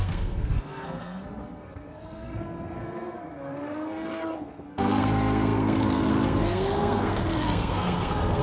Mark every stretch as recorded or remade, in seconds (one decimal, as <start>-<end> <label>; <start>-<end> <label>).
0.0-8.4 remade